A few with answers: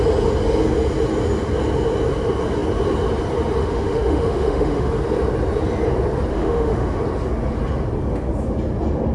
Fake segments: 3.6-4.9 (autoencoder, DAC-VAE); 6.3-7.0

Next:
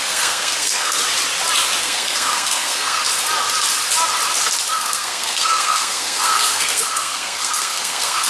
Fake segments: 0.0-1.0 (codec, SNAC); 1.8-3.0; 4.7-8.3

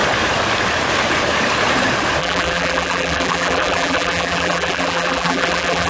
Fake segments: 2.2-5.9 (vocoder, BigVGAN v2)

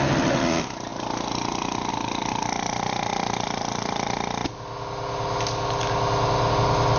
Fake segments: none